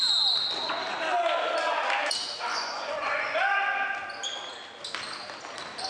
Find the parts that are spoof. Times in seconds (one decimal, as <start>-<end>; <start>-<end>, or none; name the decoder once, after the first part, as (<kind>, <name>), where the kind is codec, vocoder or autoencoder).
2.5-3.4 (vocoder, Vocos)